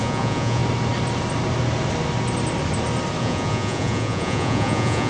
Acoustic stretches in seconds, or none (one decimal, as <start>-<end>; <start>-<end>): 0.6-3.2